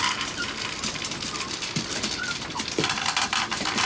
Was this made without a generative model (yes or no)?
no